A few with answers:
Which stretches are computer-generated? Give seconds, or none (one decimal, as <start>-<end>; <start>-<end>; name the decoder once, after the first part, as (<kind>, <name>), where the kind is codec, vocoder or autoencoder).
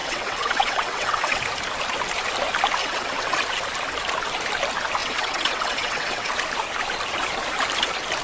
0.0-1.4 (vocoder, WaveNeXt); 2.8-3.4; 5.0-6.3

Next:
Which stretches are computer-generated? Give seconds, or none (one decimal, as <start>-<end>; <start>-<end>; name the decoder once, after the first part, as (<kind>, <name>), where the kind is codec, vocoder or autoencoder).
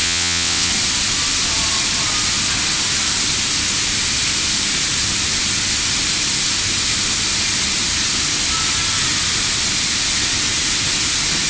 0.0-0.7 (vocoder, WaveNeXt)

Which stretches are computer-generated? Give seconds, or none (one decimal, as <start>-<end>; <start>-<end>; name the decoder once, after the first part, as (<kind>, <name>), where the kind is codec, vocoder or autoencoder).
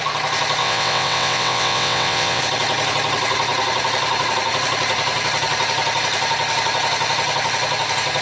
0.6-2.4 (vocoder, WaveNeXt)